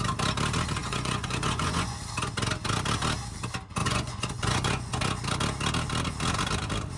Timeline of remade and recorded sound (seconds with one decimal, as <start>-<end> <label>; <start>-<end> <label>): 0.0-0.8 recorded; 0.8-2.0 remade; 2.0-3.8 recorded; 3.8-5.0 remade; 5.0-7.0 recorded